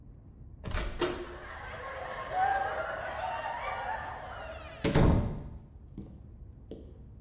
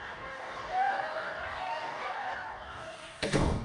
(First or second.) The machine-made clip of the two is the second